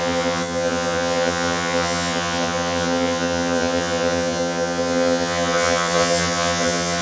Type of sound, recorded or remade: remade